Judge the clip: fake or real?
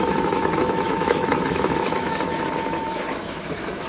fake